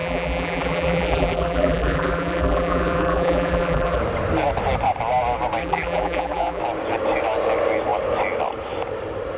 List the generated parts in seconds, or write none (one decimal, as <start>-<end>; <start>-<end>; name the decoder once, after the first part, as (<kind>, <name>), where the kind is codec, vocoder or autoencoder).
0.0-4.0 (vocoder, BigVGAN v2); 5.6-6.6